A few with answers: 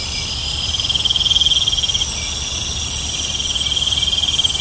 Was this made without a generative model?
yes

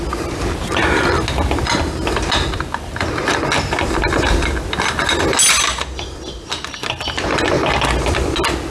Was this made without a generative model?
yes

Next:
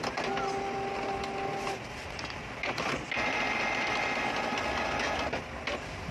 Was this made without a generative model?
yes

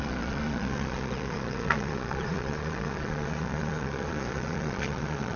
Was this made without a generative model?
no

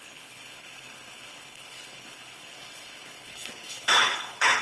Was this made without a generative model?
no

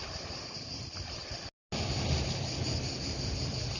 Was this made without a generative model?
yes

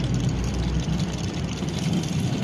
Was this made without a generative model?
yes